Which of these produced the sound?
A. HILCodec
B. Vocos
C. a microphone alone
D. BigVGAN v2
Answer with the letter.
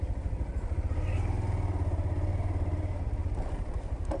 C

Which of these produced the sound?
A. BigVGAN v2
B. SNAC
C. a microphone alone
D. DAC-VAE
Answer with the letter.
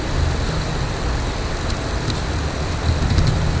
C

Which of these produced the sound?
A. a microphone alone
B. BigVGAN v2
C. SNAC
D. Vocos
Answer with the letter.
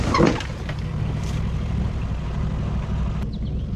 A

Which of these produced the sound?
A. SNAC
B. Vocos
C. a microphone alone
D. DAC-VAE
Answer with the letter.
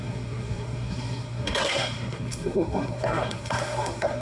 A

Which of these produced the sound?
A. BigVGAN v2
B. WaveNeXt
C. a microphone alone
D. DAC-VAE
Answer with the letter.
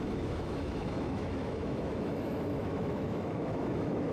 D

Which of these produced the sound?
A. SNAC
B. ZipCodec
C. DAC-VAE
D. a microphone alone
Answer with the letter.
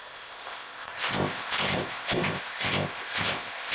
B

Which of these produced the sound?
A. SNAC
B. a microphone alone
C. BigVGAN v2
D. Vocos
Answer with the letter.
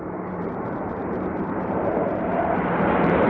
C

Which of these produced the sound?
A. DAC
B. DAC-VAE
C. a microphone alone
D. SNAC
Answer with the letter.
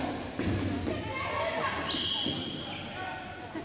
C